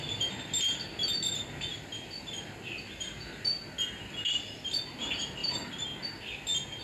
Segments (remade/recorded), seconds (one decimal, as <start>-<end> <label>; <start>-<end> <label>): 0.0-1.7 recorded; 1.7-2.3 remade; 2.3-5.4 recorded; 5.4-6.0 remade; 6.0-6.8 recorded